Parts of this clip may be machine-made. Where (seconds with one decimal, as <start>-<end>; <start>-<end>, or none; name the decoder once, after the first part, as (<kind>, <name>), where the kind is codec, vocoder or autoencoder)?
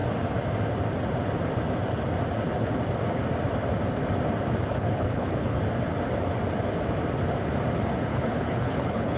4.7-5.6 (codec, HILCodec); 8.1-9.2